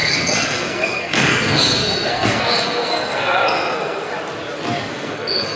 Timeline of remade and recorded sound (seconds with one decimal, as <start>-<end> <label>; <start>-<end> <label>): 0.0-4.1 remade; 4.1-4.9 recorded; 4.9-5.6 remade